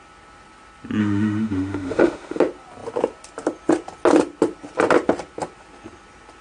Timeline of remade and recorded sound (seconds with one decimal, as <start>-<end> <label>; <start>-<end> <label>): 0.0-1.0 recorded; 1.0-2.4 remade; 2.4-6.4 recorded